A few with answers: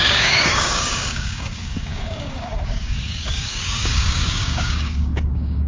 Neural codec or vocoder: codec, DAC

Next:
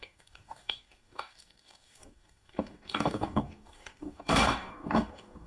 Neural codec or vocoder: codec, DAC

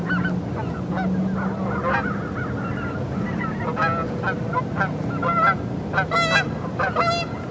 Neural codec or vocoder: none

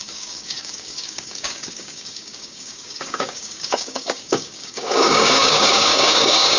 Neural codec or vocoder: codec, DAC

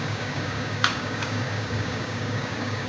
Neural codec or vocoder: codec, DAC